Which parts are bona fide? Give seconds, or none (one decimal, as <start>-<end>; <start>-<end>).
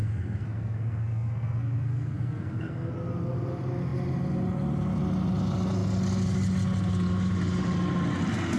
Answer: 2.9-8.6